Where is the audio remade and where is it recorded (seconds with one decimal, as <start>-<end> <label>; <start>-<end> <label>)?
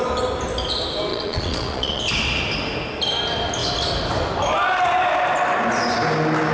0.0-1.1 recorded; 1.1-2.0 remade; 2.0-6.5 recorded